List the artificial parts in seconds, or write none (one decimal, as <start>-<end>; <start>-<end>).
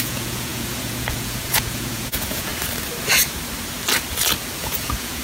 0.0-2.5; 4.6-5.2